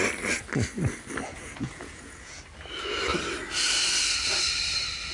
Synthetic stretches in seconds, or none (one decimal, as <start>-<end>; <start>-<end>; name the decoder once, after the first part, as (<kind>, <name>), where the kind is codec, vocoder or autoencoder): 1.3-2.4 (vocoder, Vocos)